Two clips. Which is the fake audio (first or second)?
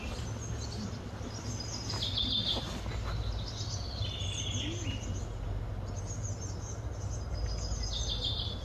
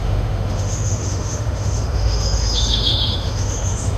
second